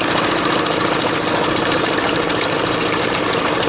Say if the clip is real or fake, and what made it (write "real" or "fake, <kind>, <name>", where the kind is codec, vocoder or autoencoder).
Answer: fake, vocoder, BigVGAN v2